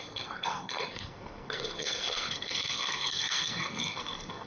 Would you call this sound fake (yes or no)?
yes